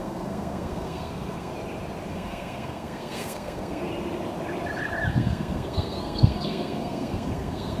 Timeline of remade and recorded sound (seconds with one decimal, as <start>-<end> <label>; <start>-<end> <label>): 0.0-1.5 remade; 1.5-2.1 recorded; 2.1-3.9 remade; 3.9-5.1 recorded; 5.1-7.8 remade